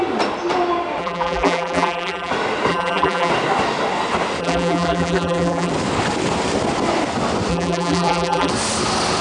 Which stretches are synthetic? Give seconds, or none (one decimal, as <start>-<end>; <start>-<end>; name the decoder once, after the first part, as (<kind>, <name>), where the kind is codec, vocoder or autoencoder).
1.0-2.3 (vocoder, BigVGAN v2); 2.7-3.3; 4.4-5.7; 7.5-8.5

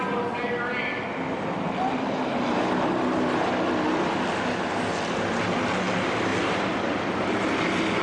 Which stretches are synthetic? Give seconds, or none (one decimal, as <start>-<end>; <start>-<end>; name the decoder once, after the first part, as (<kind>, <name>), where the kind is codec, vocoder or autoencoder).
none